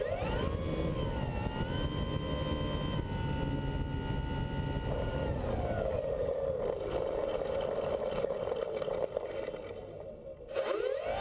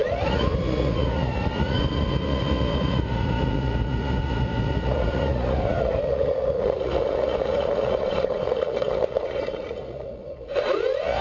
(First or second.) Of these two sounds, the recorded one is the first